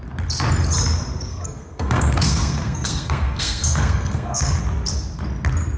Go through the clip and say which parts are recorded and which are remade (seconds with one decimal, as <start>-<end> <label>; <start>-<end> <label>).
0.0-1.3 recorded; 1.3-4.6 remade; 4.6-5.8 recorded